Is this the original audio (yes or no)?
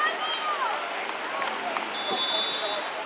yes